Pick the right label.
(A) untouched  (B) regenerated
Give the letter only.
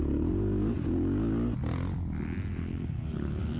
A